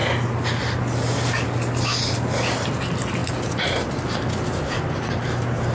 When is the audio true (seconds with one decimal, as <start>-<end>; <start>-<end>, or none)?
0.8-3.2; 4.4-5.7